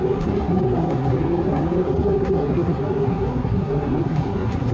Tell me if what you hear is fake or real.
fake